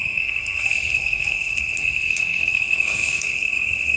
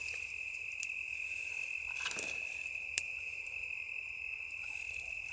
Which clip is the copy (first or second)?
first